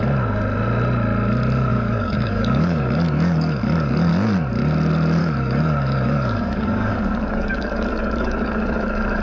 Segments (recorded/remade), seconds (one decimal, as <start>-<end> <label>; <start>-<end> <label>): 0.0-1.7 recorded; 1.7-4.1 remade; 4.1-5.2 recorded; 5.2-9.2 remade